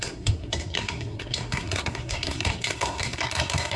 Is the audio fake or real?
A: fake